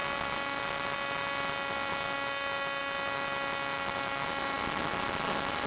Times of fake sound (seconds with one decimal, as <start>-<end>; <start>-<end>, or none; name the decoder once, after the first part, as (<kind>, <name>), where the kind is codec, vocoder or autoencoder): none